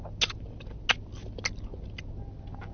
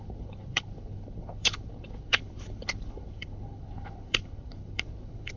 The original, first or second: first